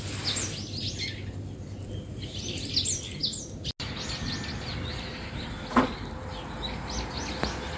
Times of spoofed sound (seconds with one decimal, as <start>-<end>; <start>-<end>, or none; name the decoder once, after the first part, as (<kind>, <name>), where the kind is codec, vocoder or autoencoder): none